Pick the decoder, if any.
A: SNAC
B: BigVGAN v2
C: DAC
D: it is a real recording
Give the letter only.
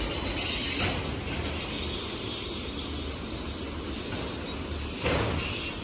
D